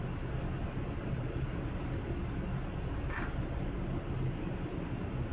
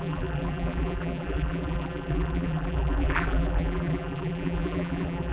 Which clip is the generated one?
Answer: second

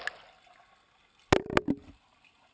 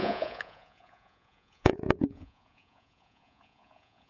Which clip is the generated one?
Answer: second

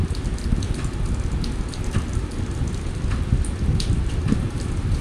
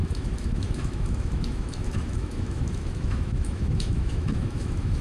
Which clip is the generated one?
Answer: second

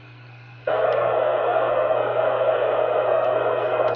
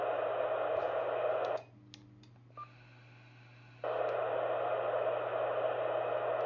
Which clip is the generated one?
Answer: first